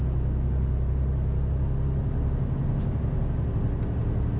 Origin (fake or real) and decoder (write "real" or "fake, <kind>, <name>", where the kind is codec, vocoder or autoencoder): real